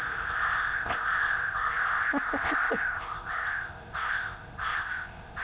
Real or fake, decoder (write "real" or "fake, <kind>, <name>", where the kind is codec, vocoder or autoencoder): fake, codec, ZipCodec